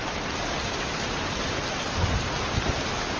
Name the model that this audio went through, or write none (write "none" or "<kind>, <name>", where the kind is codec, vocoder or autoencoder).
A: none